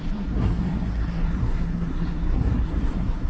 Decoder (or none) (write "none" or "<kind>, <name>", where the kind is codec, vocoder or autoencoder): codec, SNAC